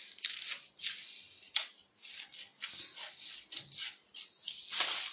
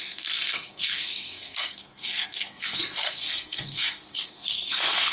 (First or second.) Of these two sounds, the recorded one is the first